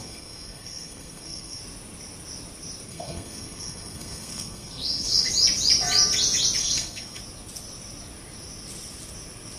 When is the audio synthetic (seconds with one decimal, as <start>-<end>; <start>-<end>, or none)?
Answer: 0.0-1.6; 2.9-5.3; 6.6-7.2